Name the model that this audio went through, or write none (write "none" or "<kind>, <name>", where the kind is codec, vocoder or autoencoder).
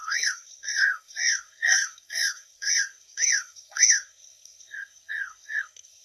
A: codec, SNAC